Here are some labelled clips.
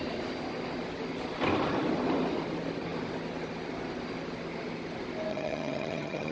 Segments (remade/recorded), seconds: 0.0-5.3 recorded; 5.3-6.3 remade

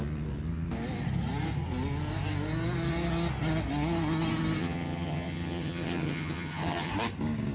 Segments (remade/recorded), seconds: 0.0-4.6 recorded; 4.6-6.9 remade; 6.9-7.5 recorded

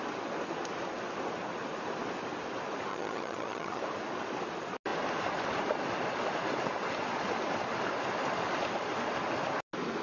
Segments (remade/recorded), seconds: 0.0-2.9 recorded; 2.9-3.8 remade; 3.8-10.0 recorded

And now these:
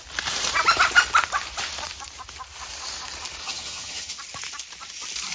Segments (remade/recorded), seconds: 0.0-3.4 recorded; 3.4-4.1 remade; 4.1-5.3 recorded

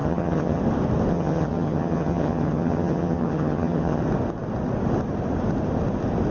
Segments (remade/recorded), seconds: 0.0-0.6 remade; 0.6-1.1 recorded; 1.1-4.0 remade; 4.0-6.3 recorded